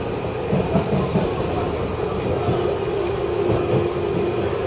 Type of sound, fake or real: real